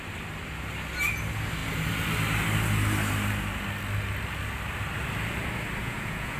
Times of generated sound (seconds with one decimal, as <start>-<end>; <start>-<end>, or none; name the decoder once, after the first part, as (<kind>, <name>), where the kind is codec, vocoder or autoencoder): 5.8-6.4 (vocoder, Vocos)